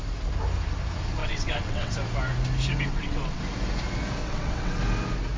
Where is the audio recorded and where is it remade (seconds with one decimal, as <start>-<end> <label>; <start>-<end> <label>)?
0.0-1.2 recorded; 1.2-1.9 remade; 1.9-2.9 recorded; 2.9-3.4 remade; 3.4-4.2 recorded; 4.2-4.8 remade; 4.8-5.4 recorded